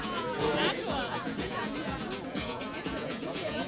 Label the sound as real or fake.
fake